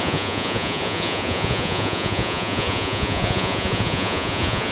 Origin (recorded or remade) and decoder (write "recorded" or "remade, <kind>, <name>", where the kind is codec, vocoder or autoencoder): remade, vocoder, Vocos